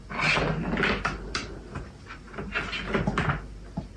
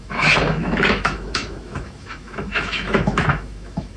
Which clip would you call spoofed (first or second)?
second